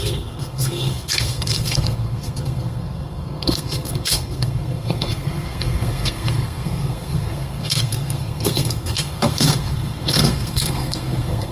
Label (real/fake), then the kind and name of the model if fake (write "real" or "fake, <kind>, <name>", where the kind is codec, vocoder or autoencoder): fake, codec, SNAC